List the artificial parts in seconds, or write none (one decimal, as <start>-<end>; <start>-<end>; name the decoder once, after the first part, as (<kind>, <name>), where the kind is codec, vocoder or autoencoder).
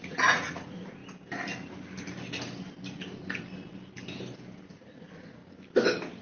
0.0-1.0 (vocoder, Vocos); 4.7-5.4